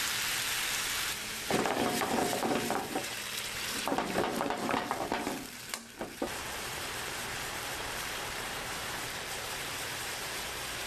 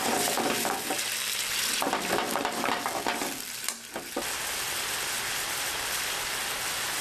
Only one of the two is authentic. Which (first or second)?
second